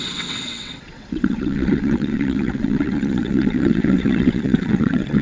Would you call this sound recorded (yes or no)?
no